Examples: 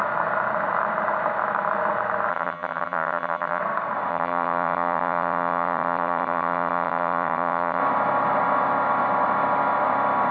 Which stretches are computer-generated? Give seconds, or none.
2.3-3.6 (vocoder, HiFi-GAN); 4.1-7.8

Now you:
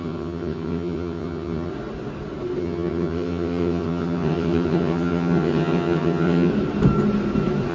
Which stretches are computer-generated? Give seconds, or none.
0.0-1.7 (vocoder, HiFi-GAN); 2.6-6.5

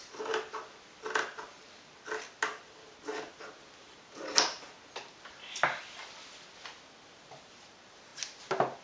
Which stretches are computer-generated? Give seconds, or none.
none

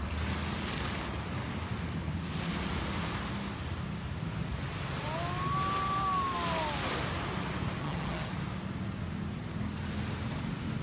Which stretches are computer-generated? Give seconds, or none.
7.8-8.3 (vocoder, HiFi-GAN)

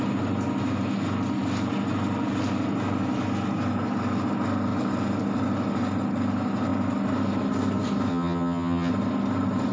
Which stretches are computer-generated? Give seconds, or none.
8.1-8.9 (vocoder, HiFi-GAN)

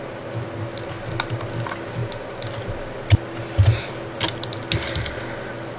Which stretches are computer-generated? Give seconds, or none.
none

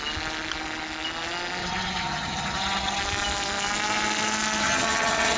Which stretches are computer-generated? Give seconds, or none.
1.6-3.0 (vocoder, HiFi-GAN); 4.6-5.4